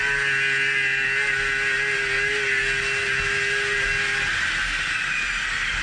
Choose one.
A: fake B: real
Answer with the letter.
B